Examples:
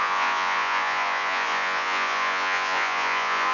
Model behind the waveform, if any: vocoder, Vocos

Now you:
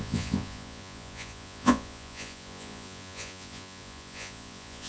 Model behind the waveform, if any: vocoder, Vocos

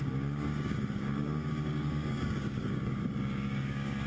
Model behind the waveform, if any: codec, DAC